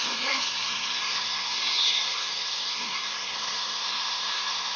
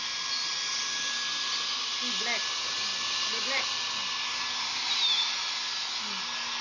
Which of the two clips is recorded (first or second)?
second